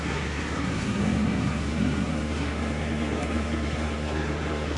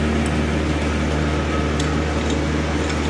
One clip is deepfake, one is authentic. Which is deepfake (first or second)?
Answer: first